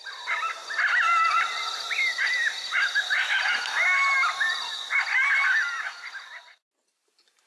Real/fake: real